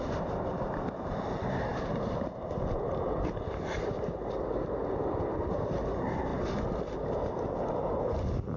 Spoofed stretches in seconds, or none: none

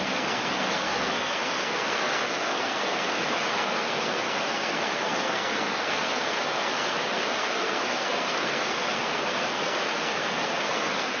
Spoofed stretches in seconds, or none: 0.0-11.2

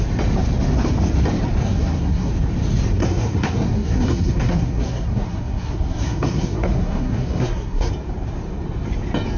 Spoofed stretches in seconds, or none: 1.6-2.3; 3.0-7.9